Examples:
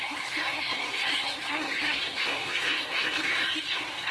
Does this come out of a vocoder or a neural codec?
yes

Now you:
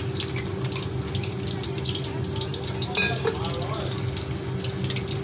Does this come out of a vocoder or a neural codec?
no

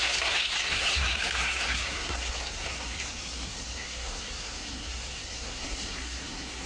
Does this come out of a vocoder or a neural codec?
yes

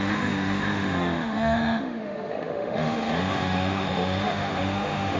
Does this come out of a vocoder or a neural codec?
yes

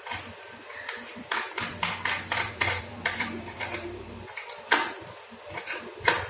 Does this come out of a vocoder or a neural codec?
yes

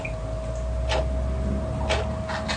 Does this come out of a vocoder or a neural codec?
no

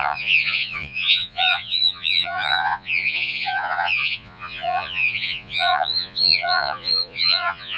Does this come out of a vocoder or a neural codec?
yes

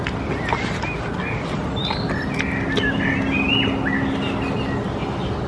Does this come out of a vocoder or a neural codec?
no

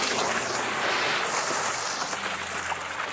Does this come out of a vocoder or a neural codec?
no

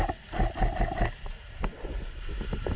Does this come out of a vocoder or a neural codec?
no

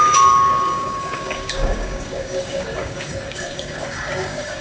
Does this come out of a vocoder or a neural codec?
yes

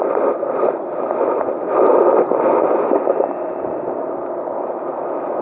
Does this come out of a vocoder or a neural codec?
no